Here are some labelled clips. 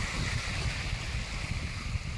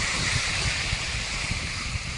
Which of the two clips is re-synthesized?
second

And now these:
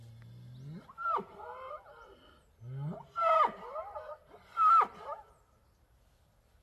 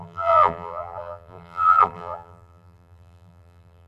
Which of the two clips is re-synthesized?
second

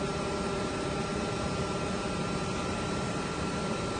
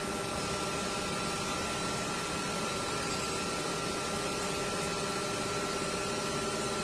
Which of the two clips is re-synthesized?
first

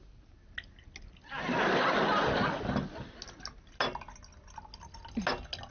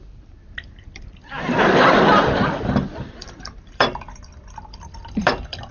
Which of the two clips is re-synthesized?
second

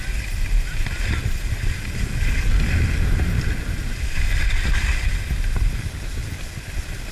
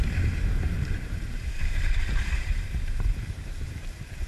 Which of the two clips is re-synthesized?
second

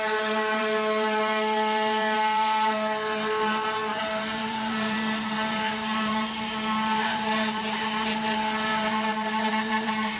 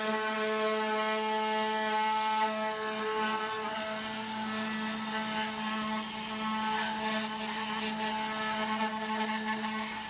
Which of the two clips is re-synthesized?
first